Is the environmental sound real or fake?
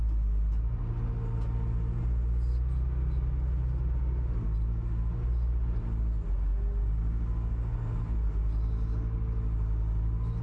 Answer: real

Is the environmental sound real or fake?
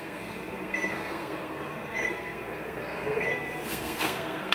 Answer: fake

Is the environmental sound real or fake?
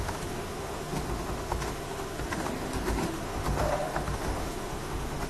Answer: fake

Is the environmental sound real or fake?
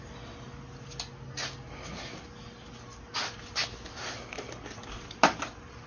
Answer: real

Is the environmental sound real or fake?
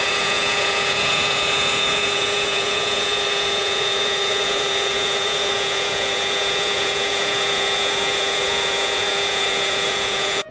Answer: fake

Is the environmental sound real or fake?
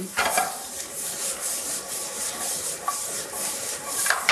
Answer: fake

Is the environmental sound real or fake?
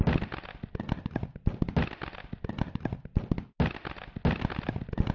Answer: real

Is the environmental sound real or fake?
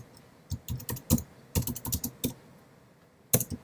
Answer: real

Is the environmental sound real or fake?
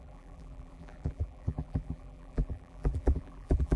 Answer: fake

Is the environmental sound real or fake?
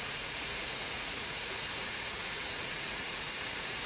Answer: fake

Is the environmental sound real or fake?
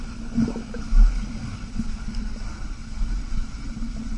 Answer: real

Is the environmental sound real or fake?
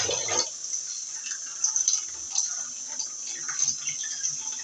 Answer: real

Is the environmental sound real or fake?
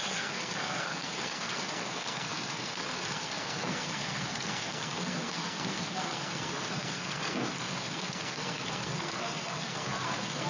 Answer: fake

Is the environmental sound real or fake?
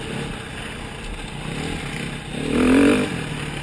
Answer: real